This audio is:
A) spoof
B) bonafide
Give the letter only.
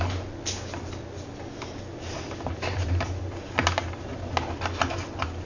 B